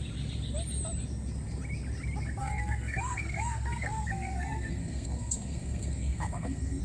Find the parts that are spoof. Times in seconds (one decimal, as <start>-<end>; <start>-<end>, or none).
2.4-6.8